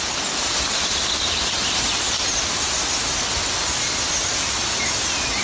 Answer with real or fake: real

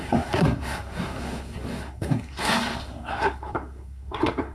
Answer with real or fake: fake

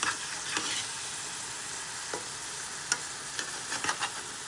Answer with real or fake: real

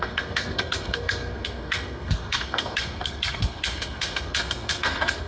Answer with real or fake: fake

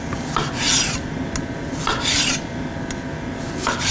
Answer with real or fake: real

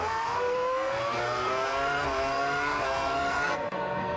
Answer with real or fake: fake